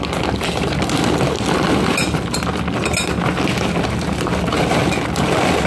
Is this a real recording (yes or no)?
yes